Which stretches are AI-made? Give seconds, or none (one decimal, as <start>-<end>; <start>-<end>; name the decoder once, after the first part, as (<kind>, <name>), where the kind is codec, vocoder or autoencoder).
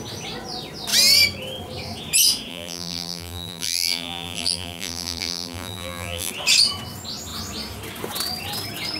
2.5-6.3 (vocoder, BigVGAN v2)